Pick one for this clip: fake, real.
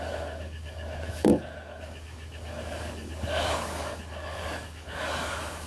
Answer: fake